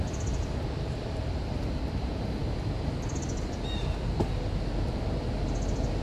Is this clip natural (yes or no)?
yes